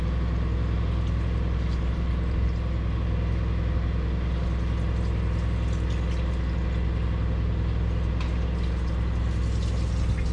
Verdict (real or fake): real